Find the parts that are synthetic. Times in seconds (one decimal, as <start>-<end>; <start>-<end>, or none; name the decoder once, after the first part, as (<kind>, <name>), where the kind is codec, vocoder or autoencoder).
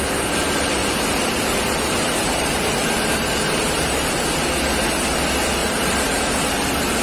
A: 0.8-4.1 (vocoder, BigVGAN v2); 5.6-6.2